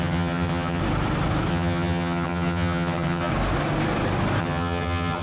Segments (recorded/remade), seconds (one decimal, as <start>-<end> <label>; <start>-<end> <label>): 0.0-0.8 remade; 0.8-1.5 recorded; 1.5-3.3 remade; 3.3-4.4 recorded; 4.4-5.2 remade

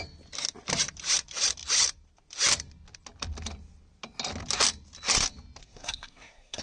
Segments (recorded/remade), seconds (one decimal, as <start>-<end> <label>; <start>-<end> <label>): 0.0-5.6 recorded; 5.6-6.6 remade

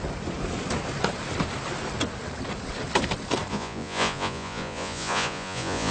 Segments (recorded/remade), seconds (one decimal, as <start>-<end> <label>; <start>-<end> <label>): 0.0-3.5 recorded; 3.5-5.9 remade